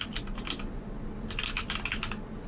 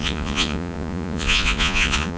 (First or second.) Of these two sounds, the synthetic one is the second